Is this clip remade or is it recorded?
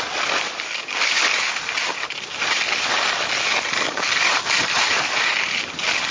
recorded